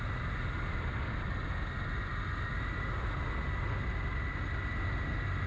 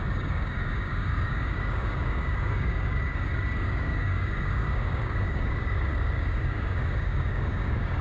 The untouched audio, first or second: first